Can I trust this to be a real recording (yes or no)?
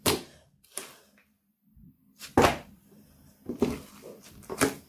yes